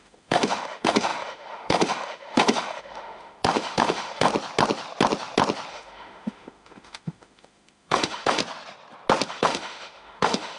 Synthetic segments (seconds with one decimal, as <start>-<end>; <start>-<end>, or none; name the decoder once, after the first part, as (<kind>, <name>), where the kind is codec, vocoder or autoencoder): 0.0-4.3 (autoencoder, DAC-VAE); 5.7-8.4; 9.3-10.6